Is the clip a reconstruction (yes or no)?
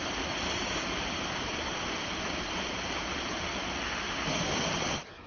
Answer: no